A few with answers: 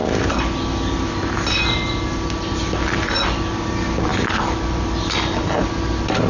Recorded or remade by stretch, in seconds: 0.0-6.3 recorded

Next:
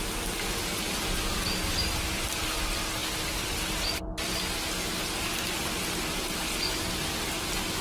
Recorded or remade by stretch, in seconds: 0.0-7.8 recorded

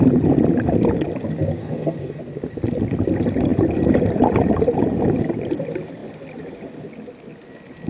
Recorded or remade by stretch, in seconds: 0.0-1.6 recorded; 1.6-2.2 remade; 2.2-7.9 recorded

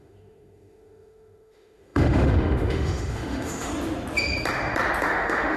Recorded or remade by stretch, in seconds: 0.0-3.7 remade; 3.7-5.0 recorded; 5.0-5.6 remade